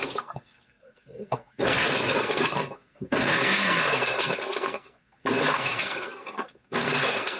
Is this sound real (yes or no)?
no